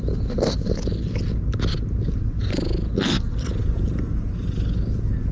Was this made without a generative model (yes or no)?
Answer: yes